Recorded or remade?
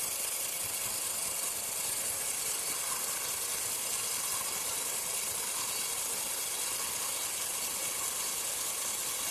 recorded